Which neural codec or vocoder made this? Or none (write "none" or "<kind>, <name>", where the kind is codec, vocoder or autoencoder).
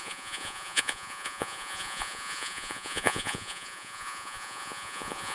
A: vocoder, Vocos